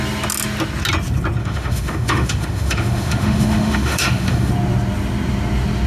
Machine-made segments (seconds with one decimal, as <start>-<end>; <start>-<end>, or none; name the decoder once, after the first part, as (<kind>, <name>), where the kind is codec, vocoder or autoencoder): 1.4-4.5 (autoencoder, DAC-VAE)